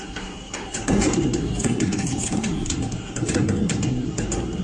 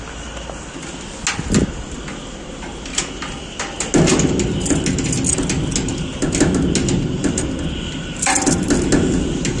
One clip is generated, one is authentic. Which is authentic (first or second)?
second